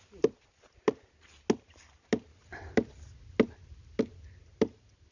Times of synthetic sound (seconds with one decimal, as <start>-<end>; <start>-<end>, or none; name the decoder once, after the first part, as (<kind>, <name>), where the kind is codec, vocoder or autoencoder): none